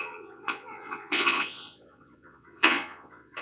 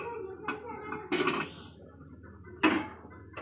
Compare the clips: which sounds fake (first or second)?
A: first